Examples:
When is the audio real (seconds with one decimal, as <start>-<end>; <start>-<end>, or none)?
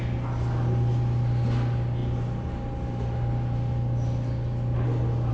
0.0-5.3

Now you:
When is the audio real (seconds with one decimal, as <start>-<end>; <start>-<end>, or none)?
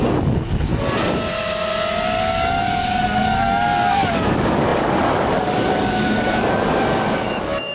0.7-2.2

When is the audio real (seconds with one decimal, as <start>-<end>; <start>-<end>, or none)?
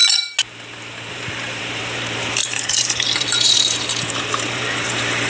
0.0-1.1